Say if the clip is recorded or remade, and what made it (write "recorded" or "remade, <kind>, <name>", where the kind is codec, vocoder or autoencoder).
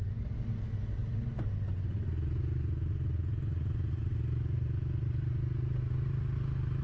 recorded